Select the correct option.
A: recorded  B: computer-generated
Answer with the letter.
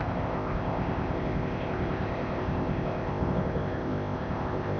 B